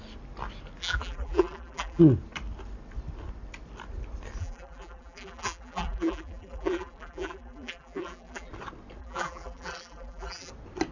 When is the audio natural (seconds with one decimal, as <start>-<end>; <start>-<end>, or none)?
0.0-0.8; 2.0-4.4; 8.5-9.0; 10.5-10.9